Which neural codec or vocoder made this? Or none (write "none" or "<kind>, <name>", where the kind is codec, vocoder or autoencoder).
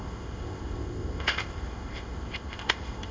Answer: codec, ZipCodec